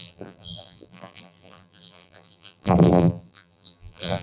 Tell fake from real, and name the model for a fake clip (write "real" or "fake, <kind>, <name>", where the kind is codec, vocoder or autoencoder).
fake, vocoder, BigVGAN v2